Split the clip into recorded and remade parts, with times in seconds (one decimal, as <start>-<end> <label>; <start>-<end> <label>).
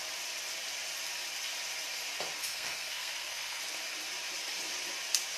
0.0-2.4 recorded; 2.4-3.6 remade; 3.6-5.4 recorded